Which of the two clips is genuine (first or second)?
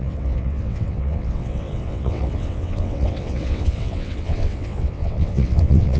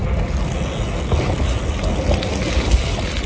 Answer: second